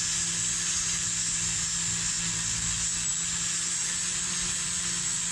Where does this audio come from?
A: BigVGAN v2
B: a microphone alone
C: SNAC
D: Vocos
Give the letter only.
B